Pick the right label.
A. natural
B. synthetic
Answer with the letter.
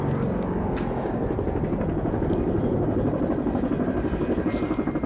A